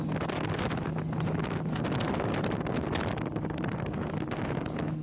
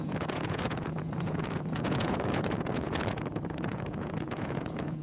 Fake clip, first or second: second